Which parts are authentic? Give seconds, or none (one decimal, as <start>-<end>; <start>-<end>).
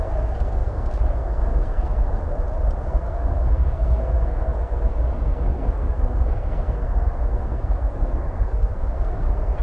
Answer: 2.2-2.8